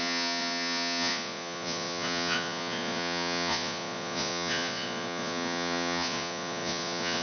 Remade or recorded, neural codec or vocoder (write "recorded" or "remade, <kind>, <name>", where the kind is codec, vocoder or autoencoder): remade, vocoder, Vocos